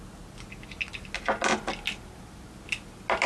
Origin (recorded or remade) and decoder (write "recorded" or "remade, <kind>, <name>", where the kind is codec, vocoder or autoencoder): recorded